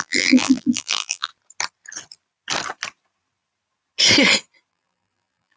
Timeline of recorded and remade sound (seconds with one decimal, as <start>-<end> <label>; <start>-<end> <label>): 0.0-1.3 remade; 1.3-4.7 recorded; 4.7-5.6 remade

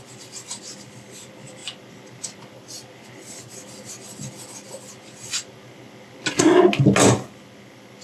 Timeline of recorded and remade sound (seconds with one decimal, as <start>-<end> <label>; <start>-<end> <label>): 0.0-8.0 recorded

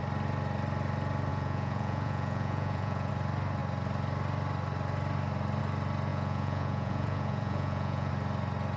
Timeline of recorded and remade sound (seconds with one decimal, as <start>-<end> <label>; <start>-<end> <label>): 0.0-1.3 recorded; 1.3-3.1 remade; 3.1-6.1 recorded; 6.1-8.1 remade; 8.1-8.8 recorded

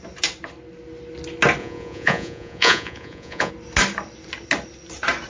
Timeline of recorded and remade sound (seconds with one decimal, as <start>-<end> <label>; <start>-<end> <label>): 0.0-1.6 recorded; 1.6-3.5 remade; 3.5-5.3 recorded

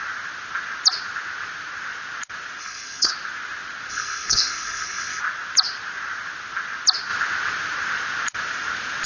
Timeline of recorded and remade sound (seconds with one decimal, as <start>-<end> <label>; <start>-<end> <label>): 0.0-2.6 recorded; 2.6-3.1 remade; 3.1-3.9 recorded; 3.9-5.2 remade; 5.2-9.1 recorded

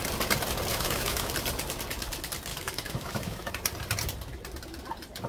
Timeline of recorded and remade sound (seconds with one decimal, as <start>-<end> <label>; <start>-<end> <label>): 0.0-0.7 recorded; 0.7-1.3 remade; 1.3-2.5 recorded; 2.5-3.5 remade; 3.5-5.3 recorded

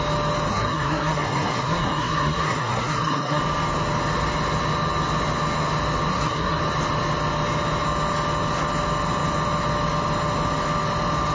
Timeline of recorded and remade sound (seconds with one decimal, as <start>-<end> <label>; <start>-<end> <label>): 0.0-0.5 recorded; 0.5-3.4 remade; 3.4-6.1 recorded; 6.1-6.6 remade; 6.6-11.3 recorded

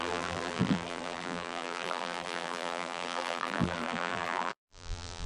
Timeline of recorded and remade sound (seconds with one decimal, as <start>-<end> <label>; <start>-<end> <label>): 0.0-5.3 remade